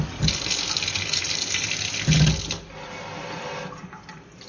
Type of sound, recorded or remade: recorded